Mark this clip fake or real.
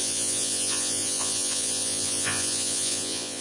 fake